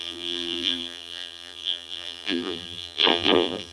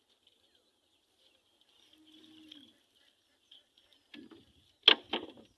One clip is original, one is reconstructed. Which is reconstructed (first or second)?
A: first